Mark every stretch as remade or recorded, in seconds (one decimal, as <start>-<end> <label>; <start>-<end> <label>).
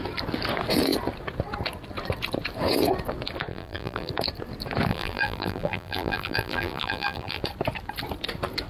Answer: 0.0-3.5 recorded; 3.5-4.1 remade; 4.1-4.9 recorded; 4.9-7.4 remade; 7.4-8.7 recorded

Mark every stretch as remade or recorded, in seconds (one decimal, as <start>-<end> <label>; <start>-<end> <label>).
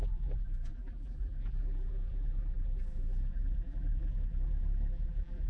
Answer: 0.0-5.5 remade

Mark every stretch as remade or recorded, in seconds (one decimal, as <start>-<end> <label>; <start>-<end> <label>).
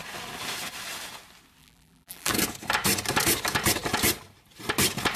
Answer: 0.0-1.6 recorded; 1.6-2.3 remade; 2.3-5.2 recorded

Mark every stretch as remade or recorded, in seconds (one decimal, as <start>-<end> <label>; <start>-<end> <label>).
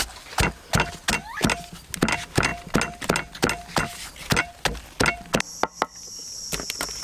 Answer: 0.0-7.0 recorded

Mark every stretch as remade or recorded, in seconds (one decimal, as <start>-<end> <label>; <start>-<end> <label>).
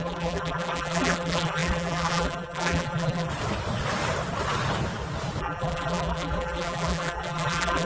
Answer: 0.0-3.3 remade; 3.3-5.4 recorded; 5.4-7.9 remade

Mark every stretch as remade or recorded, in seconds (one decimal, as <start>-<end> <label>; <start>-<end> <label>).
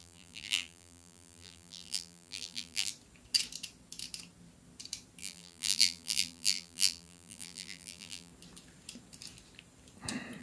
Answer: 0.0-2.9 remade; 2.9-5.2 recorded; 5.2-8.3 remade; 8.3-10.4 recorded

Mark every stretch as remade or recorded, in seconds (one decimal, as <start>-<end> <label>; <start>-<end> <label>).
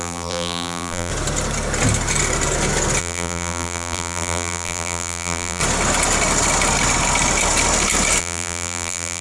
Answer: 0.0-1.1 remade; 1.1-3.0 recorded; 3.0-5.6 remade; 5.6-8.2 recorded; 8.2-9.2 remade